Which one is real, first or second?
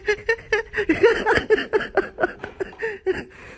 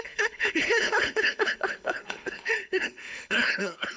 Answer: first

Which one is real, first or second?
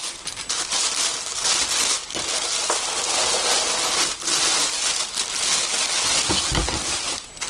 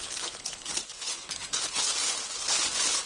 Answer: first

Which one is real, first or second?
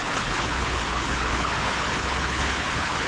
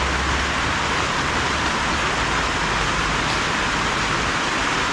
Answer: second